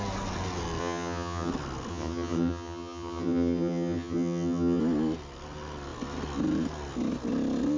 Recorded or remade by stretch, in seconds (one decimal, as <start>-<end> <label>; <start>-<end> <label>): 0.0-0.8 recorded; 0.8-1.5 remade; 1.5-1.9 recorded; 1.9-4.8 remade; 4.8-7.8 recorded